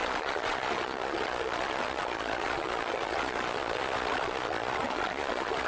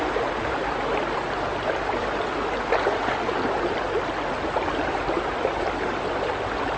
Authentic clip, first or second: second